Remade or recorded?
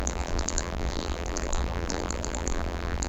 remade